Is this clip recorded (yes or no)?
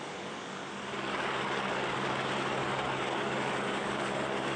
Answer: no